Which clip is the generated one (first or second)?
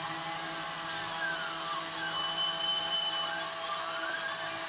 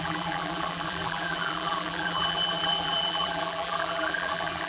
second